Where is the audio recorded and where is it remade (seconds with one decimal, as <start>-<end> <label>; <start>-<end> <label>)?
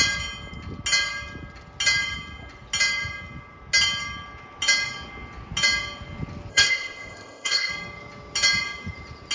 0.0-6.5 recorded; 6.5-7.7 remade; 7.7-9.3 recorded